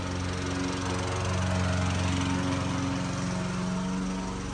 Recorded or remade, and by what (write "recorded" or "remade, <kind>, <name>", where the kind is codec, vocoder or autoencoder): recorded